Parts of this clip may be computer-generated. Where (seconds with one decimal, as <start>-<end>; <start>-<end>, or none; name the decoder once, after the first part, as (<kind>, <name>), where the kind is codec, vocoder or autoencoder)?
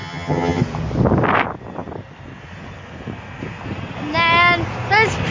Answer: 0.0-0.6 (vocoder, HiFi-GAN)